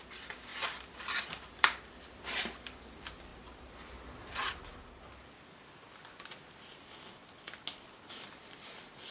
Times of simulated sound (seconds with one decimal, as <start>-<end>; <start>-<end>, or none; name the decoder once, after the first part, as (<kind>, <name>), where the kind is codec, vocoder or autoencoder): 0.0-0.5 (vocoder, BigVGAN v2); 1.0-3.3; 8.1-9.1